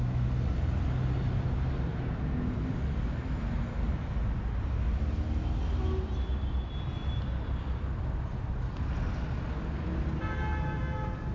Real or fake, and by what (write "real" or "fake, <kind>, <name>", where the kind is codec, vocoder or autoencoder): real